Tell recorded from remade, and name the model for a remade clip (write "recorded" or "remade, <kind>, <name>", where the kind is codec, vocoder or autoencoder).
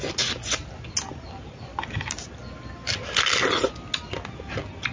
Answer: recorded